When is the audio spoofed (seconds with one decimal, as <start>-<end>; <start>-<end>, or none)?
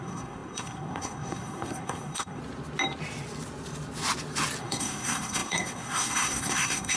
0.0-2.4; 4.6-7.0